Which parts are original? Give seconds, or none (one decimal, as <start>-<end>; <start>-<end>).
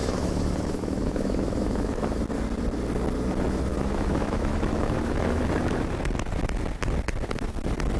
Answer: 2.2-3.7; 5.4-8.0